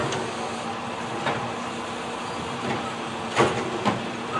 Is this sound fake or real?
real